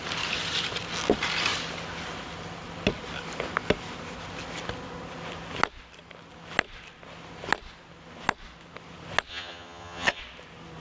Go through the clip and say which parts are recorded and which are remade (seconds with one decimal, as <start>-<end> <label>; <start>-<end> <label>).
0.0-9.3 recorded; 9.3-10.2 remade; 10.2-10.8 recorded